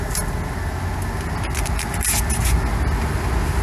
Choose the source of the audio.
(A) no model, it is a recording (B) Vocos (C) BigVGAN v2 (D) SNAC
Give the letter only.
A